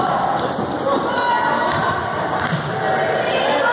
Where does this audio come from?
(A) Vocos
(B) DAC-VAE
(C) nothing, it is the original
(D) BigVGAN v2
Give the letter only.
C